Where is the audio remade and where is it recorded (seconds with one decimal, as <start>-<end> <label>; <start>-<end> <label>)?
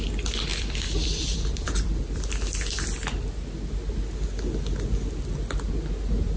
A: 0.0-0.5 recorded; 0.5-2.3 remade; 2.3-6.4 recorded